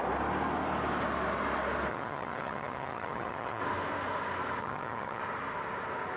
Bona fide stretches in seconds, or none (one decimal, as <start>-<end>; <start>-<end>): 0.0-1.9; 3.6-4.6; 5.2-6.2